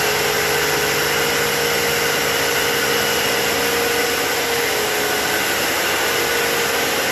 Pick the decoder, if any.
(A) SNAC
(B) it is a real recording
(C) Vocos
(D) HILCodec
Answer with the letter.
B